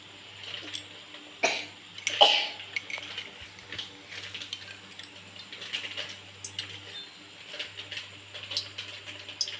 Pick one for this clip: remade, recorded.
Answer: recorded